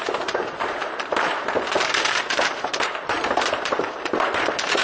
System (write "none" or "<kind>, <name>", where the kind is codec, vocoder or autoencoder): vocoder, BigVGAN v2